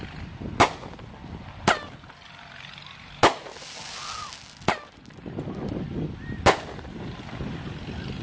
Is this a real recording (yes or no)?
yes